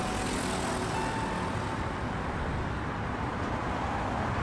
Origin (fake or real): real